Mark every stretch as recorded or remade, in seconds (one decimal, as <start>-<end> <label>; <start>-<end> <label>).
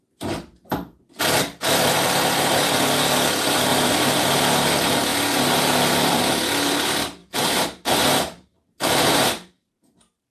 0.0-3.7 recorded; 3.7-4.4 remade; 4.4-7.2 recorded; 7.2-10.3 remade